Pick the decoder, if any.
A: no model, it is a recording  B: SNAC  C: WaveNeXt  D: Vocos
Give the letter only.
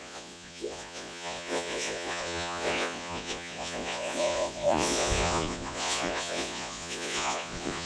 D